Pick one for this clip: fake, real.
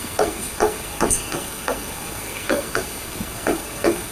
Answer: fake